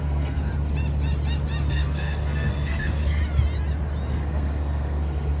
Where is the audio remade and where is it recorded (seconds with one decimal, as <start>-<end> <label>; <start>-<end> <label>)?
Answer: 0.0-0.5 remade; 0.5-1.7 recorded; 1.7-3.2 remade; 3.2-4.1 recorded; 4.1-5.4 remade